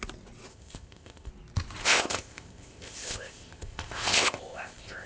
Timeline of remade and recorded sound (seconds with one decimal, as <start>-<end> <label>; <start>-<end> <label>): 0.0-0.5 recorded; 0.5-1.3 remade; 1.3-1.8 recorded; 1.8-5.1 remade